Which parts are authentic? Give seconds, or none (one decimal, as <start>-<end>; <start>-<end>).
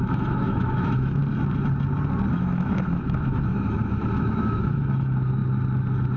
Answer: 1.2-2.3; 5.4-6.2